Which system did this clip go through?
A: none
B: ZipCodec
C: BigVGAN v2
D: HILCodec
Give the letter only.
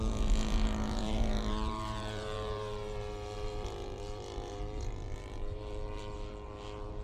C